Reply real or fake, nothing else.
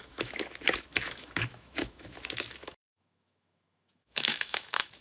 fake